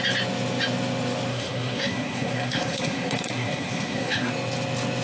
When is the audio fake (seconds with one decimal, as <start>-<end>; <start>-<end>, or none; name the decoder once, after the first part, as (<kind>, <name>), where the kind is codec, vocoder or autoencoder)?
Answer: 1.3-4.3 (codec, SNAC)